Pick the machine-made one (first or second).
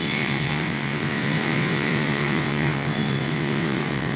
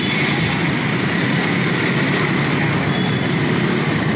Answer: first